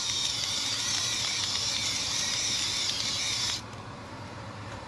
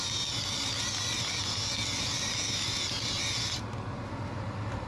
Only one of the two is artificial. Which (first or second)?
first